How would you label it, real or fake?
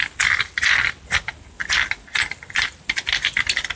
real